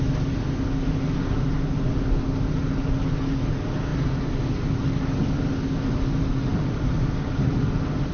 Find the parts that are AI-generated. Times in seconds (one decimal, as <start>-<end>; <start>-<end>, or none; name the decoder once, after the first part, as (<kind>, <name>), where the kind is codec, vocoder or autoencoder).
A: none